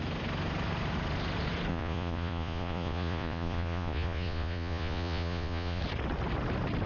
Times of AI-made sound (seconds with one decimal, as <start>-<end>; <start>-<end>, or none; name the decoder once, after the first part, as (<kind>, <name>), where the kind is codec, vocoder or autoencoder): 1.7-5.8 (vocoder, Vocos)